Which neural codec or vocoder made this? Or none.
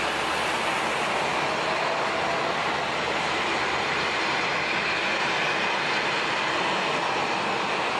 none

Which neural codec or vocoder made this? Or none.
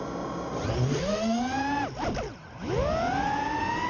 none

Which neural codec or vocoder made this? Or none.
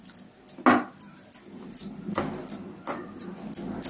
none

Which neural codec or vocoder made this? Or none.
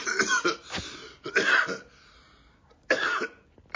none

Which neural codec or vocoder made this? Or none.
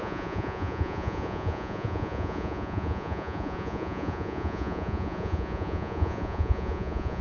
vocoder, Vocos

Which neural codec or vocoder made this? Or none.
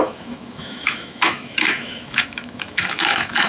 autoencoder, DAC-VAE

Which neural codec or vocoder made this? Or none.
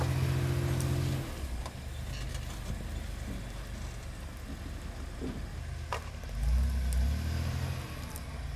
none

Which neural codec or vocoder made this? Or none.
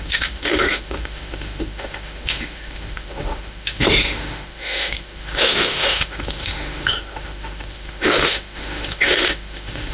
autoencoder, DAC-VAE